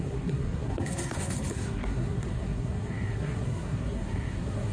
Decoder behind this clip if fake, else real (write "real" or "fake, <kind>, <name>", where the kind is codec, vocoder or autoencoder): fake, codec, SNAC